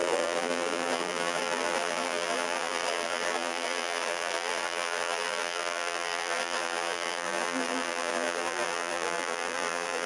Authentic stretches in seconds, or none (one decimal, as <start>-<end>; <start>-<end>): none